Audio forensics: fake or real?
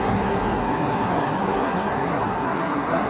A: fake